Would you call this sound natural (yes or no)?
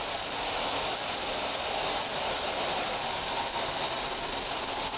yes